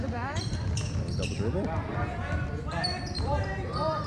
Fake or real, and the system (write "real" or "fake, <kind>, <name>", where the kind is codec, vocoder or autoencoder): fake, vocoder, BigVGAN v2